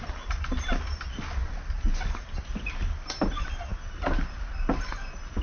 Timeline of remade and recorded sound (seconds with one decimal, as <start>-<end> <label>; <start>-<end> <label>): 0.0-5.4 recorded